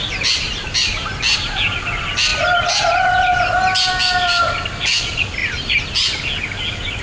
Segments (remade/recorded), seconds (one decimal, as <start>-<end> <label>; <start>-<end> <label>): 0.0-7.0 recorded